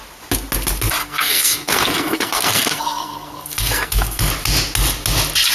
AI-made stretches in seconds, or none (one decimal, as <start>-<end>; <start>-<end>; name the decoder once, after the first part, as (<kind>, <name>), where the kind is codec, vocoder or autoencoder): 1.0-4.3 (codec, SNAC)